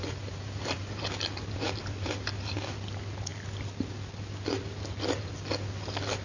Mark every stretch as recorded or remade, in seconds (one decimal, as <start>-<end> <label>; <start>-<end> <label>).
0.0-1.0 remade; 1.0-6.2 recorded